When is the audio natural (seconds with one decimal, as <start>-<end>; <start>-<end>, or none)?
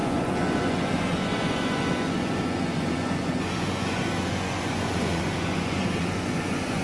none